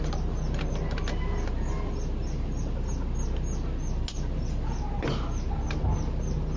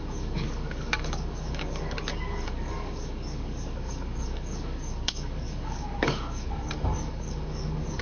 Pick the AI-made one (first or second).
second